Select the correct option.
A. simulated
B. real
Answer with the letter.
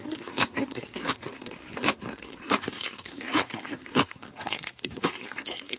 A